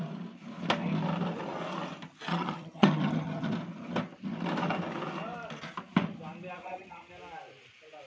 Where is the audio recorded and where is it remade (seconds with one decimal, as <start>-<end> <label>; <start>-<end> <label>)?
0.0-2.3 recorded; 2.3-3.5 remade; 3.5-6.6 recorded; 6.6-7.1 remade; 7.1-8.1 recorded